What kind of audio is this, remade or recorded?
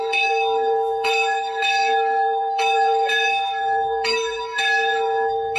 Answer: remade